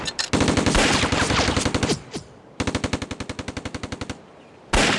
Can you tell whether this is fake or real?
real